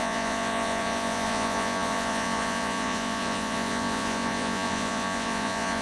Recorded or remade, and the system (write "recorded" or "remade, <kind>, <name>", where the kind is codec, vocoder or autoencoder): remade, vocoder, Vocos